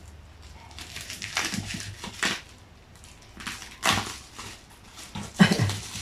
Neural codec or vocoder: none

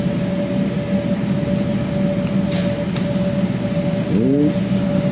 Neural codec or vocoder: none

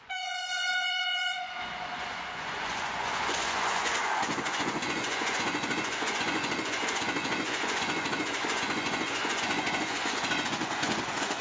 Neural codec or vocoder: vocoder, Vocos